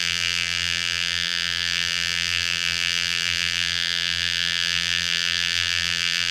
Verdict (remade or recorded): remade